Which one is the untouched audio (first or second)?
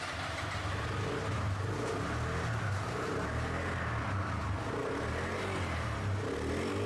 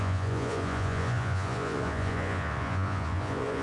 first